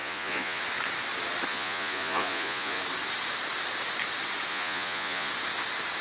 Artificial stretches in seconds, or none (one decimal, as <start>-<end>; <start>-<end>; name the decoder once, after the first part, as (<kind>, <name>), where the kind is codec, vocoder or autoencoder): 0.0-0.6 (vocoder, Vocos); 1.5-2.8; 4.5-5.3